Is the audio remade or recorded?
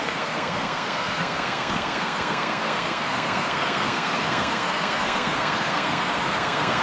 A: remade